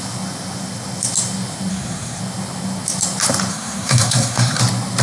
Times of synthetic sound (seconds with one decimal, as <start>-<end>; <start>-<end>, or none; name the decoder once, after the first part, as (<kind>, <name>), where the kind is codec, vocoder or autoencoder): 1.7-2.2 (codec, SNAC); 3.5-4.6